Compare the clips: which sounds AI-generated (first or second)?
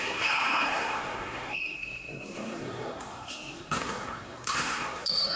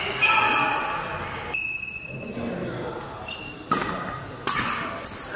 first